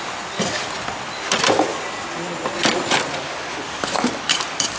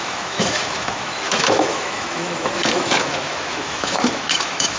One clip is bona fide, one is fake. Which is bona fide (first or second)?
first